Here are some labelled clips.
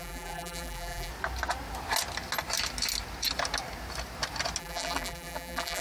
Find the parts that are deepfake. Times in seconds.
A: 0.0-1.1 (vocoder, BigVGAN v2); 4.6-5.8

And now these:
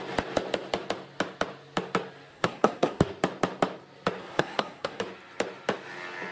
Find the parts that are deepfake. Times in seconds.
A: 2.3-3.0 (codec, SNAC); 4.2-5.0

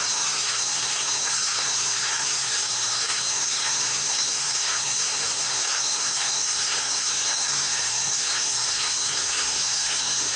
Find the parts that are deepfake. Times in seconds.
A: 0.0-10.4 (codec, SNAC)